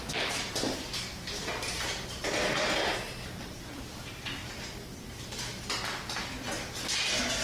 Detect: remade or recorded recorded